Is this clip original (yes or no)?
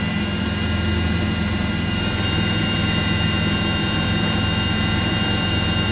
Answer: no